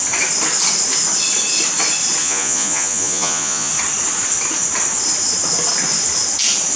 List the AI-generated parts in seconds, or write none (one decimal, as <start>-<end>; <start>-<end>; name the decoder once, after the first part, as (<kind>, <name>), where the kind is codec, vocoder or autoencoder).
2.2-3.7 (vocoder, Vocos)